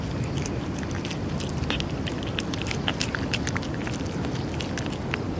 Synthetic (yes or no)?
no